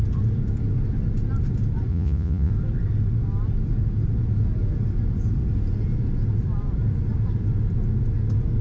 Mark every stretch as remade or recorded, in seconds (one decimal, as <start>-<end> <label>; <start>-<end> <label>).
0.0-1.9 recorded; 1.9-2.5 remade; 2.5-8.6 recorded